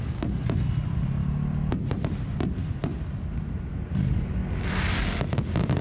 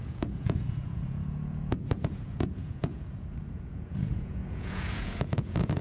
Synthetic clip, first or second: second